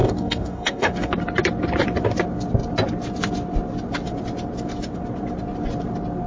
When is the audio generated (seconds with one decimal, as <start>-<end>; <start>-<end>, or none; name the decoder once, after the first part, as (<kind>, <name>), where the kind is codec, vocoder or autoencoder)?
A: 0.0-1.1 (codec, DAC)

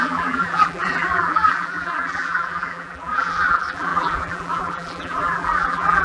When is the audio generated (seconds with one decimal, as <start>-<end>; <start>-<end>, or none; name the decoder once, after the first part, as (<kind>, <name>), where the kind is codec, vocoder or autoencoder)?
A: 0.0-6.0 (vocoder, BigVGAN v2)

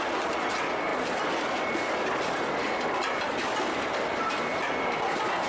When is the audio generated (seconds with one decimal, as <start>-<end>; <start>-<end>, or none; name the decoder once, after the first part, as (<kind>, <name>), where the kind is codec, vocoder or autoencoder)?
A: none

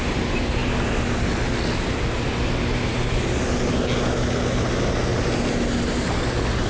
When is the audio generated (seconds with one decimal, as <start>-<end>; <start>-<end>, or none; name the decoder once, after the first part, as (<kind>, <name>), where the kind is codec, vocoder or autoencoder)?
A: none

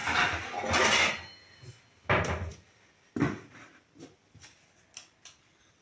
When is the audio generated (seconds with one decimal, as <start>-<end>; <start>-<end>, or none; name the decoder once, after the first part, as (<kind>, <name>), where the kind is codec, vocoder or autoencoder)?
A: none

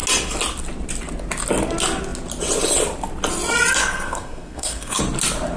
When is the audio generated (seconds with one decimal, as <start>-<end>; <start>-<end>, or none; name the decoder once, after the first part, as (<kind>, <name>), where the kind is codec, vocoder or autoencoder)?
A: 3.8-5.0 (codec, SNAC)